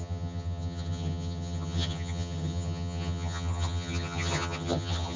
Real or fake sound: fake